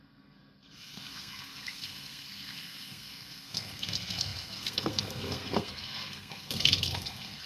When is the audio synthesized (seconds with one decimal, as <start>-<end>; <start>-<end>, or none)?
0.0-7.5